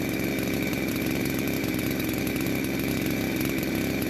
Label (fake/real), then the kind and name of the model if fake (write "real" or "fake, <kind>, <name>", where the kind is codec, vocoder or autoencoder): fake, vocoder, BigVGAN v2